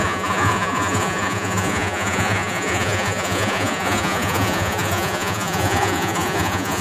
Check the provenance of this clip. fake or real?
fake